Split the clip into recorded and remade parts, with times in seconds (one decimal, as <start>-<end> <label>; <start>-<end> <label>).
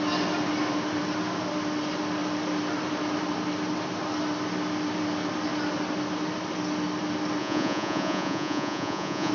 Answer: 0.0-7.4 recorded; 7.4-9.3 remade